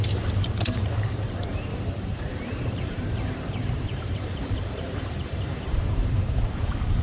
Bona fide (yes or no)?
no